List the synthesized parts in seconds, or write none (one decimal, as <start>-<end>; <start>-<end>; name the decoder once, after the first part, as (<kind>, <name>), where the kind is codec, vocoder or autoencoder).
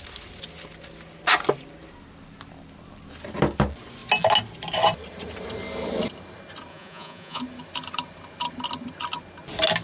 6.7-7.4 (vocoder, Vocos)